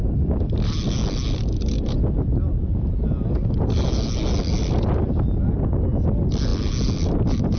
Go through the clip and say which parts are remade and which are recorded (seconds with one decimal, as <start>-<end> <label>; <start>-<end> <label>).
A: 0.0-7.6 recorded